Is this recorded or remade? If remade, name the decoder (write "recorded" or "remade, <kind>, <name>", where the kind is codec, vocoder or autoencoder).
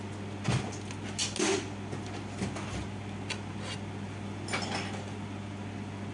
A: recorded